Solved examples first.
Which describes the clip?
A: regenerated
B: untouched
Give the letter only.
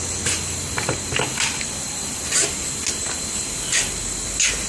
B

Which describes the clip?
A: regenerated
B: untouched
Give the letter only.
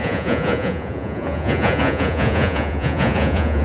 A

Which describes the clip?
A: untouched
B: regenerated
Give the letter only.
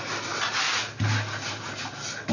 A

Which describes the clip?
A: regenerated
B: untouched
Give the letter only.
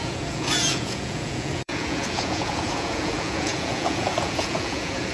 A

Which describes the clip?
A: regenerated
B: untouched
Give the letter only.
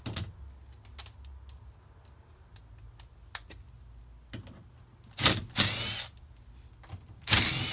B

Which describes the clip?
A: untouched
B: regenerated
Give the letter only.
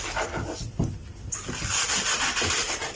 A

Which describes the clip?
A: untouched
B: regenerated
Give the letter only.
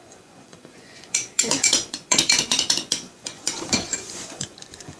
B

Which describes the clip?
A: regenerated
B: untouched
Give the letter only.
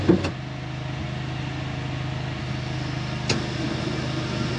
B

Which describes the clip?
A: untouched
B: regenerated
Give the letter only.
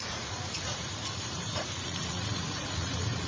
B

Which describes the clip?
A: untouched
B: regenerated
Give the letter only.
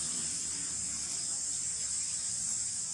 A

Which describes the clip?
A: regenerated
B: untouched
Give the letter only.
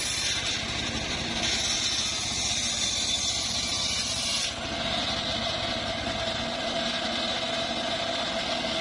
B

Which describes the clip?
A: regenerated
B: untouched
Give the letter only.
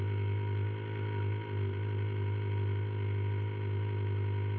B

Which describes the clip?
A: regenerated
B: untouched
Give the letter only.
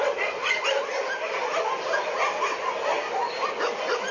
B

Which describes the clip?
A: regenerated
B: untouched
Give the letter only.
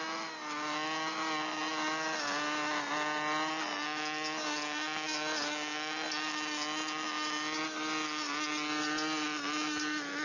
B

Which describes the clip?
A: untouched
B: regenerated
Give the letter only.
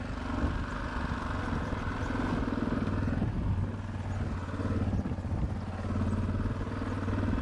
A